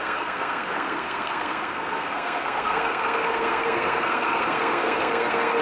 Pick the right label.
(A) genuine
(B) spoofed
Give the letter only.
B